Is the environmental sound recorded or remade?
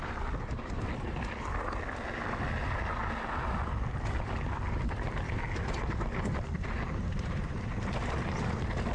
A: recorded